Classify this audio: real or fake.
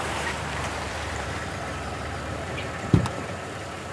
fake